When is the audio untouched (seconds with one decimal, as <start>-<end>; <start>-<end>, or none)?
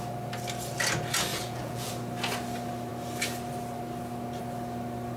0.0-1.3; 1.9-5.2